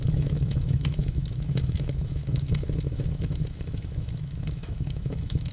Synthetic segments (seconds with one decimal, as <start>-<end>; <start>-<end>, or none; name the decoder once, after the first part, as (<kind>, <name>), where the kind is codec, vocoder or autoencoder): 0.0-5.5 (autoencoder, DAC-VAE)